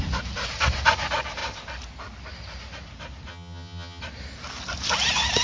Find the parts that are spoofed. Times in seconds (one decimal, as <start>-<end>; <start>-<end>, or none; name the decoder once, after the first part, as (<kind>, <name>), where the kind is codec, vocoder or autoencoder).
3.3-4.0 (vocoder, HiFi-GAN)